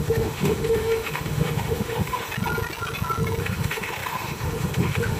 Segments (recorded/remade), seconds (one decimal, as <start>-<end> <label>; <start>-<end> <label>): 0.0-2.3 remade; 2.3-3.4 recorded; 3.4-5.2 remade